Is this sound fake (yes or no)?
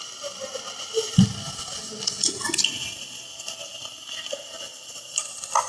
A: no